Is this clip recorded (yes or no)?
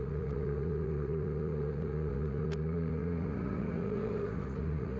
no